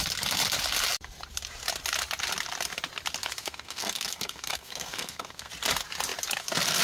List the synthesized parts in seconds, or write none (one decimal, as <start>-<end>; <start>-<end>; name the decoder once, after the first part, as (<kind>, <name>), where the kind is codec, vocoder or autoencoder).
3.4-5.5 (codec, SNAC)